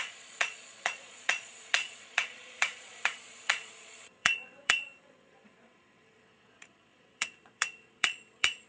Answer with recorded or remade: remade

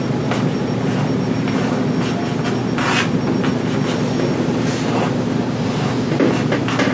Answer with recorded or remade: recorded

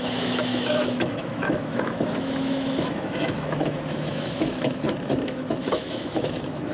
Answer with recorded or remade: remade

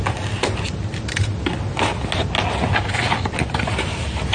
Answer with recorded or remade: recorded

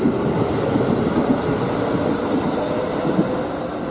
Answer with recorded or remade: recorded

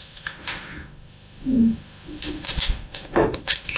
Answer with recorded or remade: remade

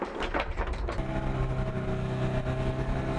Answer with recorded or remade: recorded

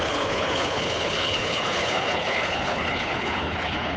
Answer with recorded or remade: remade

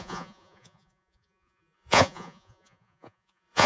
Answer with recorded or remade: remade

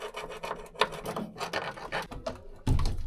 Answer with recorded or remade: recorded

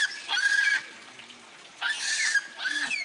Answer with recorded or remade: recorded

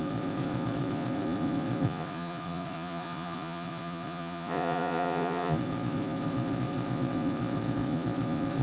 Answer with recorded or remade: remade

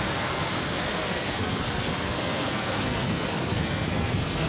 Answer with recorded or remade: remade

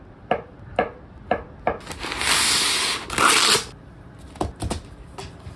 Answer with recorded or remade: recorded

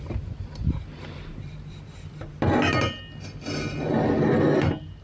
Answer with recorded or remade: recorded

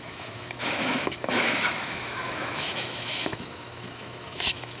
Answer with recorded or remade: remade